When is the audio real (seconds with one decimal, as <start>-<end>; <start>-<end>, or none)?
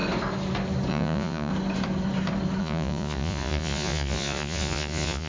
0.0-0.9; 1.5-2.6